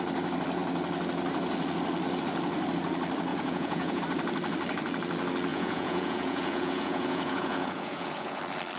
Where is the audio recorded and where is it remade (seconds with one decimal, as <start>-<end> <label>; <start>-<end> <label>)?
0.0-3.3 recorded; 3.3-4.0 remade; 4.0-5.5 recorded; 5.5-8.4 remade; 8.4-8.8 recorded